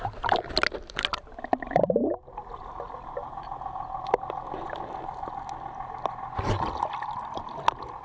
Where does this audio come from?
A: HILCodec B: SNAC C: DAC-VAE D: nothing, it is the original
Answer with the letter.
D